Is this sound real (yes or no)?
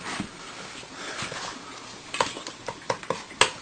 yes